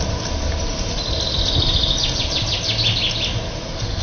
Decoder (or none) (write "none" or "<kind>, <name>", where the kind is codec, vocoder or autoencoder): none